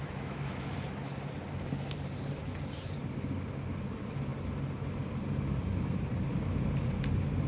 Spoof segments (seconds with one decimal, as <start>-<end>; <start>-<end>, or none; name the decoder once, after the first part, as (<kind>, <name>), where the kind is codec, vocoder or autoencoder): 0.0-0.7 (autoencoder, DAC-VAE)